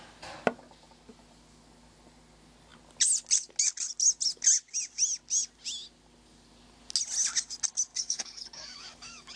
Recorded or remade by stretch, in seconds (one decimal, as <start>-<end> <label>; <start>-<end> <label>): 0.0-7.9 recorded; 7.9-9.4 remade